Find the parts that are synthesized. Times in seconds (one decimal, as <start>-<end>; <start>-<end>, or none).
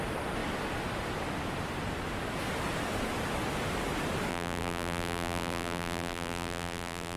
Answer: 4.3-7.2